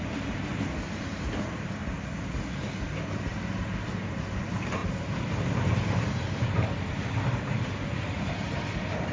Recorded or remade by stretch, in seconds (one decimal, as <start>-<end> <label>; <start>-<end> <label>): 0.0-1.8 remade; 1.8-3.3 recorded; 3.3-9.1 remade